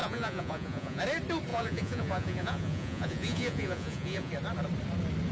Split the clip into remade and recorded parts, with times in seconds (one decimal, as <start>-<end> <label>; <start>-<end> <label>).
0.0-1.0 remade; 1.0-1.5 recorded; 1.5-4.3 remade; 4.3-5.3 recorded